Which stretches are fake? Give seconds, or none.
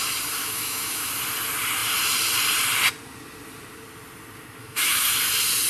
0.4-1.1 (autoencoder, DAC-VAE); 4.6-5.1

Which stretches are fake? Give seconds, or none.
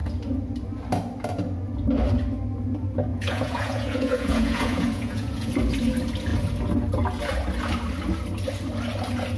3.1-5.5 (vocoder, Vocos)